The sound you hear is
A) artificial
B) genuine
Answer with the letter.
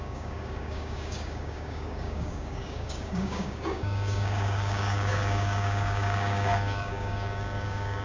A